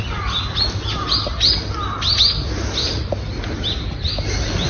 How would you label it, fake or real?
real